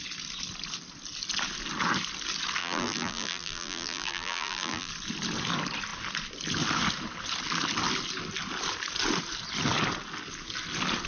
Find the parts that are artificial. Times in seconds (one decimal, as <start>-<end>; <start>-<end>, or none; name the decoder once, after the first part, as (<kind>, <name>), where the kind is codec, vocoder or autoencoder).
2.6-4.9 (vocoder, BigVGAN v2)